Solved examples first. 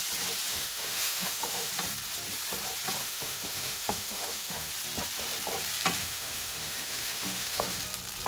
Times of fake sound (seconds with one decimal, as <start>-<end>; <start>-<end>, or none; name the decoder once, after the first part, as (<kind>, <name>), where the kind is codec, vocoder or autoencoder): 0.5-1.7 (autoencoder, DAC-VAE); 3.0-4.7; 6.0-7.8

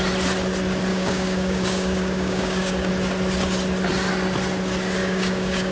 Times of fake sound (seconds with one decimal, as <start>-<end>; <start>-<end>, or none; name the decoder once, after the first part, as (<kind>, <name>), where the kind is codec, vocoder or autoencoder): 0.9-2.9 (codec, DAC); 5.0-5.7

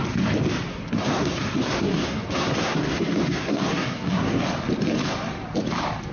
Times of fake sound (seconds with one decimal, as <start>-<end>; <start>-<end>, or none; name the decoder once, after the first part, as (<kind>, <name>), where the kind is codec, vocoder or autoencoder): 0.7-4.4 (codec, SNAC)

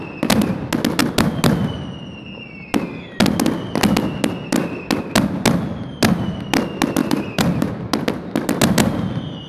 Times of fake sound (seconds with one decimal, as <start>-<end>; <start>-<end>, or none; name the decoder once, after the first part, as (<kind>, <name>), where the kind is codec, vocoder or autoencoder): 7.0-7.7 (vocoder, BigVGAN v2)

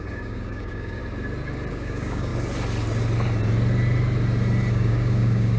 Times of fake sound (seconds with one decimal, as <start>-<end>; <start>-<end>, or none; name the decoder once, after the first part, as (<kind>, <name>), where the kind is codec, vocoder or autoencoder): 0.0-1.0 (codec, DAC); 1.7-2.3; 4.7-5.6